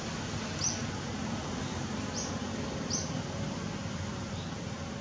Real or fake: real